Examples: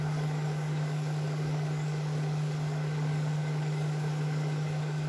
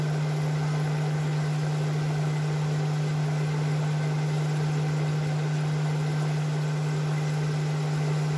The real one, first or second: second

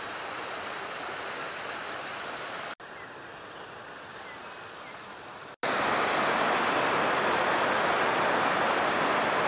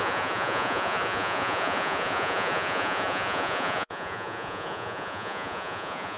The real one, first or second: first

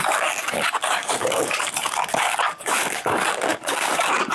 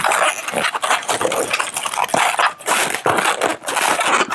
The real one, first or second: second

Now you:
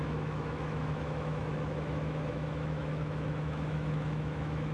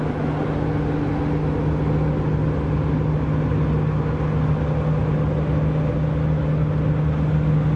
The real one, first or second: second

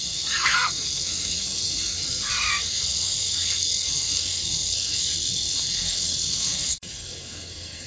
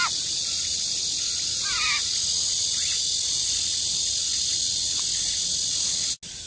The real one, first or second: second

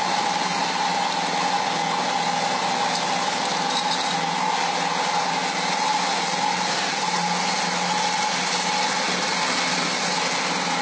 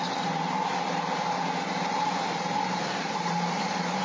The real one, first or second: first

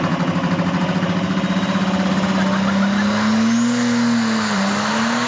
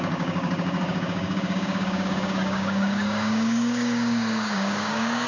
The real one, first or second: first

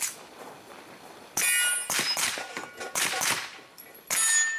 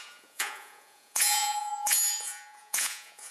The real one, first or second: first